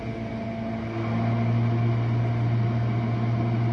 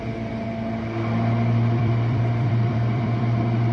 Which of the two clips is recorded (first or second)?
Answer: first